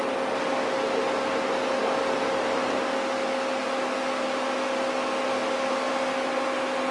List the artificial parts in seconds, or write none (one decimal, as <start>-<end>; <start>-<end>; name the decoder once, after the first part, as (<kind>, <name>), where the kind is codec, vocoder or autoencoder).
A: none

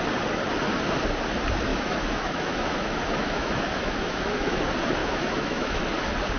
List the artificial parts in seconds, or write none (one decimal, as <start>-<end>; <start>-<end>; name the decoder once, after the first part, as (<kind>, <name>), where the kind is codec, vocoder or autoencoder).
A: 1.7-4.6 (autoencoder, DAC-VAE); 5.0-5.8

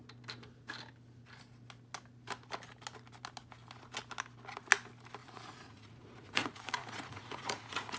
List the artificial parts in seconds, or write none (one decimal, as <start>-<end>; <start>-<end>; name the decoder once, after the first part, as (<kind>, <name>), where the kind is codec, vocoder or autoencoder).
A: 5.2-8.0 (vocoder, Vocos)

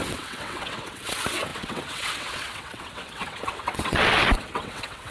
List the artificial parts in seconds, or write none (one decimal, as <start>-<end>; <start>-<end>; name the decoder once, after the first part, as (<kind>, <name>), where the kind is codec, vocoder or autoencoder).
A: 0.0-5.1 (vocoder, WaveNeXt)

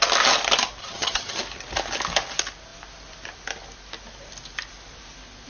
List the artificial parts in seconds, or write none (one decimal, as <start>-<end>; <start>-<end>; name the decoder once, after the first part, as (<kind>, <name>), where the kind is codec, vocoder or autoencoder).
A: 0.8-1.4 (vocoder, HiFi-GAN)

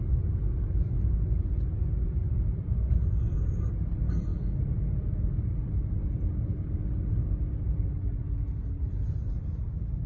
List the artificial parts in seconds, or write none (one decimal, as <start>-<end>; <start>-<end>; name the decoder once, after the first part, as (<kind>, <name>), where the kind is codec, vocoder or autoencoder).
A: none

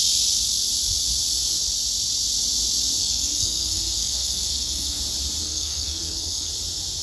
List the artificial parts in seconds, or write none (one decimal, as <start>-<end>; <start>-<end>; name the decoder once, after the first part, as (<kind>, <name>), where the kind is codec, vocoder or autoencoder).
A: 3.0-5.0 (codec, SNAC); 5.4-6.5